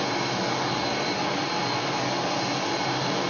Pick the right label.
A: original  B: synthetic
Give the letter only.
A